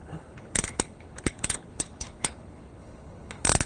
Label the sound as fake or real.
fake